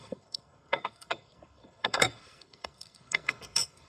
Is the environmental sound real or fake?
fake